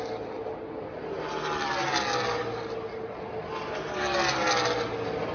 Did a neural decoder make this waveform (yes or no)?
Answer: no